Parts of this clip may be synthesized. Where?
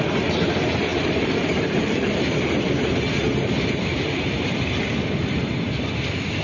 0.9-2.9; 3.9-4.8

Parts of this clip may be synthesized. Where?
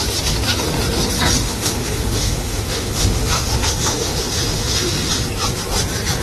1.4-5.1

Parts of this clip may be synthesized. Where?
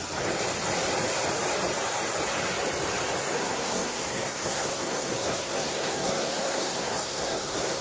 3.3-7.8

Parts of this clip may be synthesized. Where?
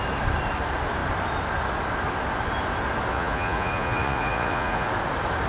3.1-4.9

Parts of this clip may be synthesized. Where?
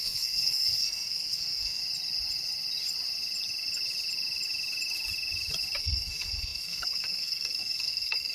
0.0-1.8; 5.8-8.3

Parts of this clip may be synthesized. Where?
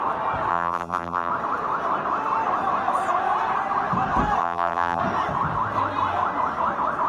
0.5-1.3; 4.4-5.0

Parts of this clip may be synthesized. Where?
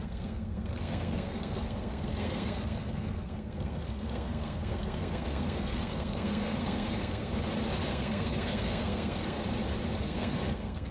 0.0-7.3; 7.9-9.4; 10.0-10.9